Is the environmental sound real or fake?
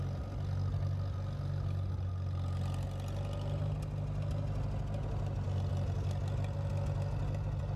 real